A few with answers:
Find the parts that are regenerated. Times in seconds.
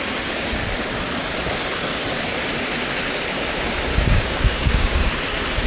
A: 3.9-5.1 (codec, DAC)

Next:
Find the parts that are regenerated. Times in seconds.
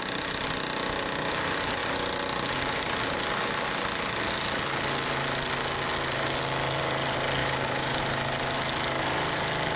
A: 7.4-8.0 (codec, DAC)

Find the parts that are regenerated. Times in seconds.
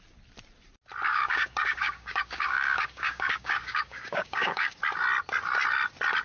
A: 1.1-4.8 (codec, DAC)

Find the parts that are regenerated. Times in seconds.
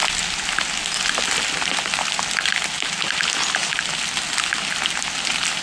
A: none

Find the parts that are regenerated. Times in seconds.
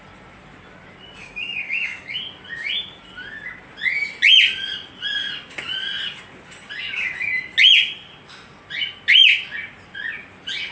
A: 1.2-2.2 (codec, DAC)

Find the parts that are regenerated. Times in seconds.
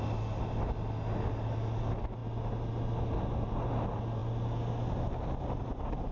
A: none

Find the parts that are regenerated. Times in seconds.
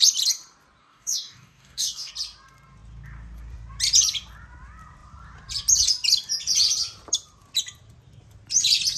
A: 0.8-2.1 (codec, DAC)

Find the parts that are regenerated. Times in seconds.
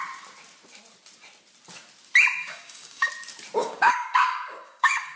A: 2.4-3.1 (codec, DAC); 3.6-5.2